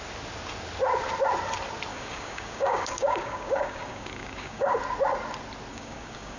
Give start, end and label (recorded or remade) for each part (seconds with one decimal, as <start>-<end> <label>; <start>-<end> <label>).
0.0-1.9 recorded; 1.9-4.8 remade; 4.8-5.7 recorded; 5.7-6.4 remade